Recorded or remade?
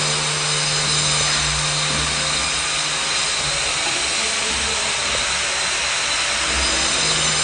recorded